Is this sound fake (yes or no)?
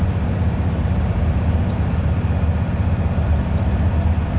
no